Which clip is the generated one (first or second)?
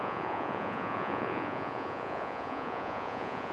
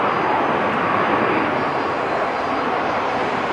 first